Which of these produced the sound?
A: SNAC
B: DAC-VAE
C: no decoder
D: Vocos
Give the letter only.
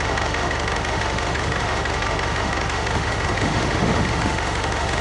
B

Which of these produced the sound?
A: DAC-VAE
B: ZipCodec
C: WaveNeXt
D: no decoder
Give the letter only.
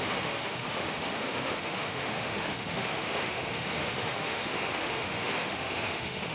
A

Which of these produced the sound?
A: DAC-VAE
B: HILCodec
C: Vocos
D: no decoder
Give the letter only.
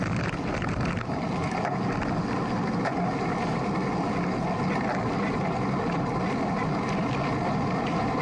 D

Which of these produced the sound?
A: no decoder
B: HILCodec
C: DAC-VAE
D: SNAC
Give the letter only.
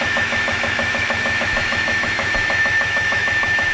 C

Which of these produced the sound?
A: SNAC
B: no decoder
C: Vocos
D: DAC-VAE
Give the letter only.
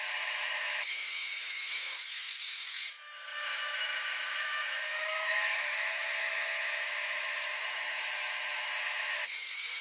D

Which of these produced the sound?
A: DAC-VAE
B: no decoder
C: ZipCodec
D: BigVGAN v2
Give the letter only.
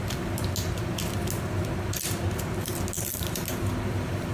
B